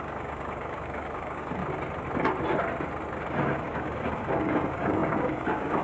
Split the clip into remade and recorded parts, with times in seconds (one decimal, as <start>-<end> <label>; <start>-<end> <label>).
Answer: 0.0-1.6 remade; 1.6-3.2 recorded; 3.2-5.8 remade